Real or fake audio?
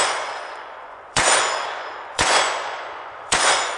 fake